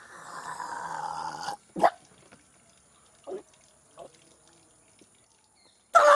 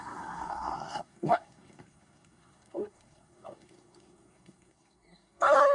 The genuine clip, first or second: first